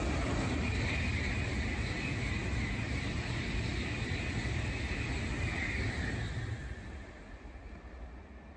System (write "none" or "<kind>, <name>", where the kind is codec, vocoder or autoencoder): none